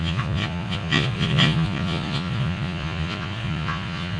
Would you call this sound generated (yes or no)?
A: yes